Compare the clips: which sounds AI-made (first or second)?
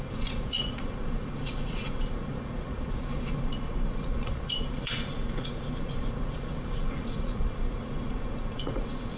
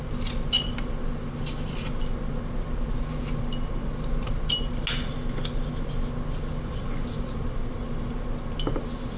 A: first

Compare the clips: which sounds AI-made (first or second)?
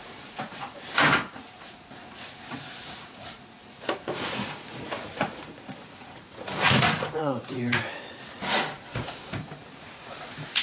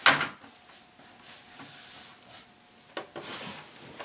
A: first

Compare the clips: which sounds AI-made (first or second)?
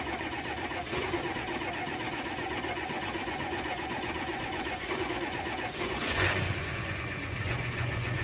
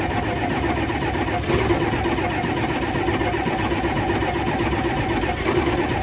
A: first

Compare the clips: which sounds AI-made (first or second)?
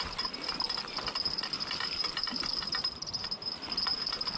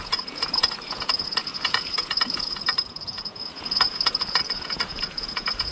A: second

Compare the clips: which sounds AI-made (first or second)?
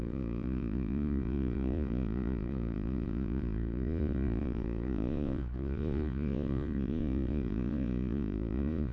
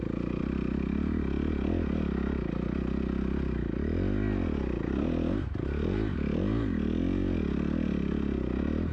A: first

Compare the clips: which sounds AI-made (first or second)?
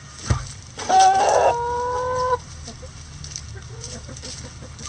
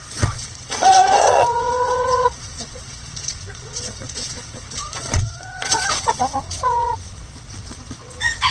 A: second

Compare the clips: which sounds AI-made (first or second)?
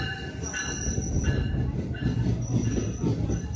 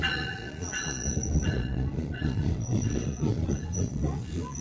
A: second